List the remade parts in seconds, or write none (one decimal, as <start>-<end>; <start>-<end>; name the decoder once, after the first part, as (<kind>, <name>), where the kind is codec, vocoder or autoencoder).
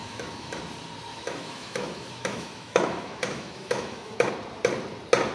0.0-0.6 (autoencoder, DAC-VAE); 1.1-4.3